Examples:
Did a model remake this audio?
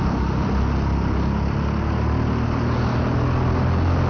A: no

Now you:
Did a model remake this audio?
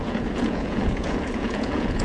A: yes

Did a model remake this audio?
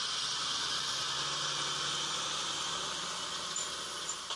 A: yes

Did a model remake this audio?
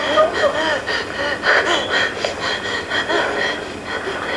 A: no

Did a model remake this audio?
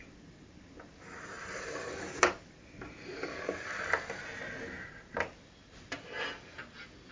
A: no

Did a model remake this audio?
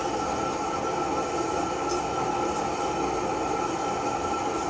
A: no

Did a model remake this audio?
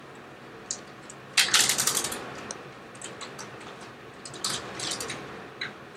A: no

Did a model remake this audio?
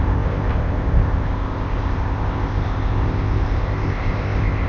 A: yes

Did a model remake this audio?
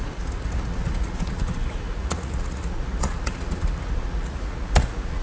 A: yes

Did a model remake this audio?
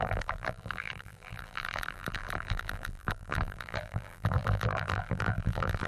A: yes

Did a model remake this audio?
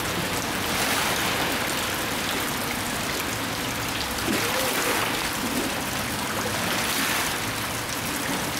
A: no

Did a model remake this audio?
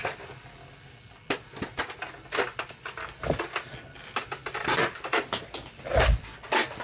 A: no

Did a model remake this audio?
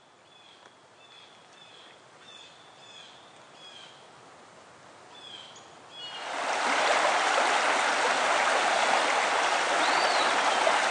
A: no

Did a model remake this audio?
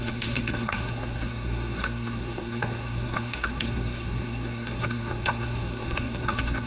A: yes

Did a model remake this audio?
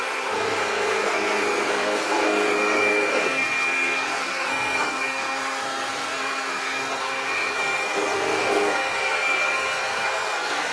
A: yes